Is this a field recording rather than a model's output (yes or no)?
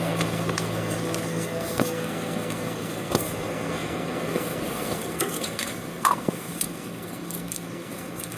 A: no